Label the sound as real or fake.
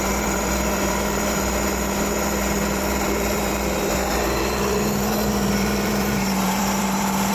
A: fake